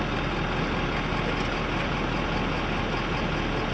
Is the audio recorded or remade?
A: recorded